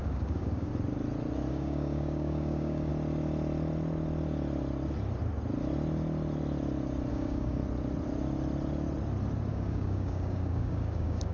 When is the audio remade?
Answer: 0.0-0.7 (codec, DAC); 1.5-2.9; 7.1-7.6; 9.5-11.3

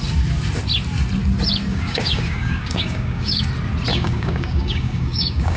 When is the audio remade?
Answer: 1.7-3.5 (codec, DAC); 3.9-5.6

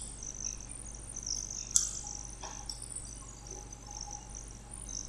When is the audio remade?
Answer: none

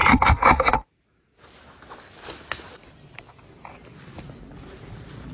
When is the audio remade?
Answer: none

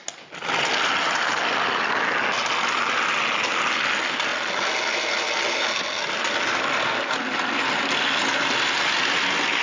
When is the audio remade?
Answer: none

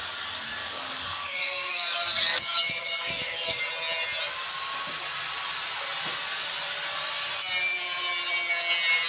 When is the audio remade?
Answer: 0.6-3.6 (codec, DAC)